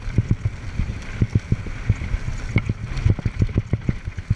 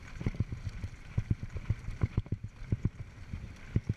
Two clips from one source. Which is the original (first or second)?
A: first